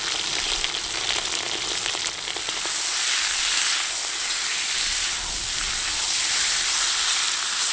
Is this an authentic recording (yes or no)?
yes